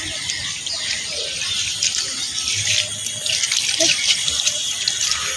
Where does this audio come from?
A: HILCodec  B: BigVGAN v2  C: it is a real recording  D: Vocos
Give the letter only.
B